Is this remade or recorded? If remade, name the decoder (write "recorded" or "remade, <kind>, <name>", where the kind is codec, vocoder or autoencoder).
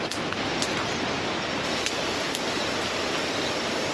recorded